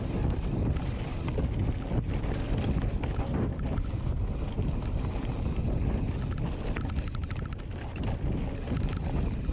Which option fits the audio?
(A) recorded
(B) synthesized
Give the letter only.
A